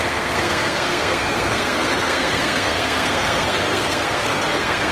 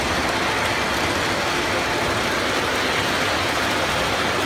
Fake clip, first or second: first